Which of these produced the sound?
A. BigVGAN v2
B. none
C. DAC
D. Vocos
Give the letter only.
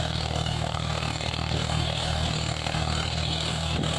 C